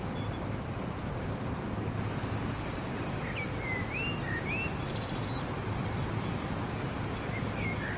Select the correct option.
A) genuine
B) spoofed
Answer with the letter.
A